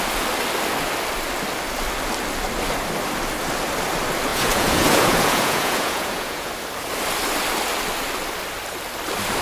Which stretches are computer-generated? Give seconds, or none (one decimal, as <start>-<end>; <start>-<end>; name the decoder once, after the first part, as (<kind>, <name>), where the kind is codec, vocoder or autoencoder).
4.3-6.5 (vocoder, Vocos)